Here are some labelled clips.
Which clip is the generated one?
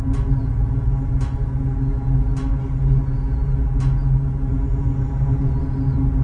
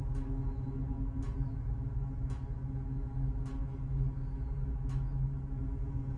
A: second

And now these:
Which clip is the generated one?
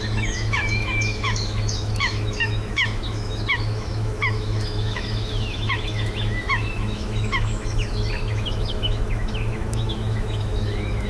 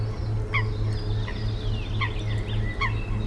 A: first